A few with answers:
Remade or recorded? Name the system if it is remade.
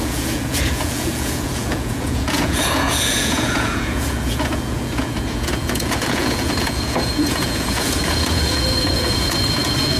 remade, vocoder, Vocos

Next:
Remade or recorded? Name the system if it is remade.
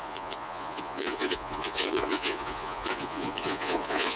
remade, vocoder, Vocos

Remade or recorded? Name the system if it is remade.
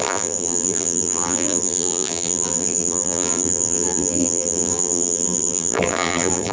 remade, vocoder, BigVGAN v2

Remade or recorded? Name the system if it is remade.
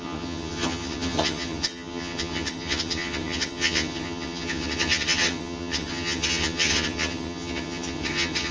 remade, vocoder, HiFi-GAN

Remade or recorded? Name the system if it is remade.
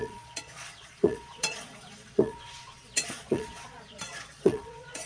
remade, vocoder, Vocos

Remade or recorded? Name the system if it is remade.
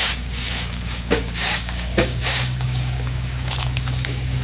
remade, codec, DAC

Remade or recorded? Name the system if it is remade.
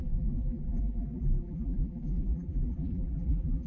remade, vocoder, BigVGAN v2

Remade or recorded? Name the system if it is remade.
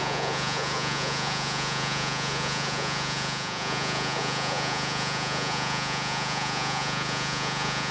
remade, vocoder, Vocos